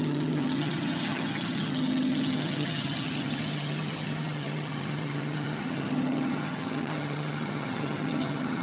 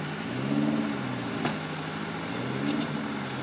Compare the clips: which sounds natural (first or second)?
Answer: second